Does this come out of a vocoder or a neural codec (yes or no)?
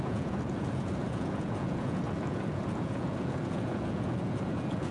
yes